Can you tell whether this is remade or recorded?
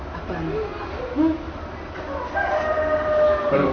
recorded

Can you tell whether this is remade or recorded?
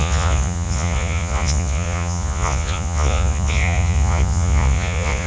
remade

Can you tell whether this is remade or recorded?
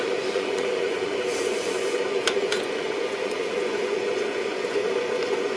remade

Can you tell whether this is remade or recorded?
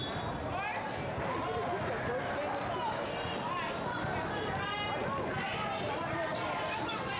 recorded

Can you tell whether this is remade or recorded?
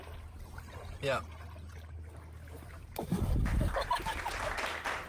recorded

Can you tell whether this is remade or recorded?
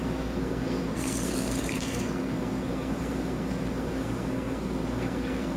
remade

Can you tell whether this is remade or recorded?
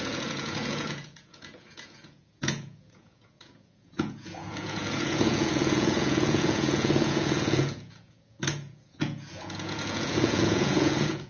remade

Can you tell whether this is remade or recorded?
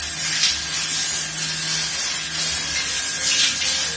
recorded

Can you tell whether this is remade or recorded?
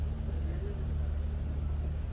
recorded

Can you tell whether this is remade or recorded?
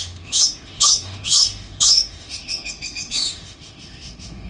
remade